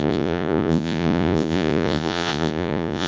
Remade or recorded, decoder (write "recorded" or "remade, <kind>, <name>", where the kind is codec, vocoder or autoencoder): remade, vocoder, Vocos